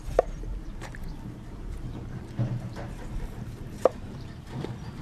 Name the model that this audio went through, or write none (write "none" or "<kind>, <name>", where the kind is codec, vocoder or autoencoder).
vocoder, BigVGAN v2